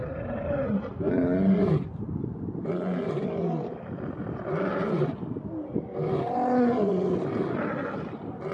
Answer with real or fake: real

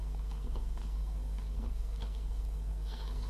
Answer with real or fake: fake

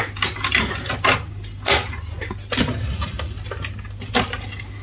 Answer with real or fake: real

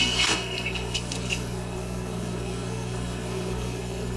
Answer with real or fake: fake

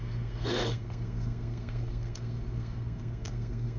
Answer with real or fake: fake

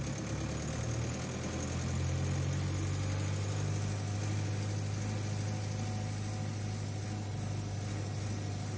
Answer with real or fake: real